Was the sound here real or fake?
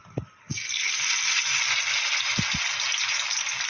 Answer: real